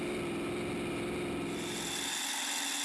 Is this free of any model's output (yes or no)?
yes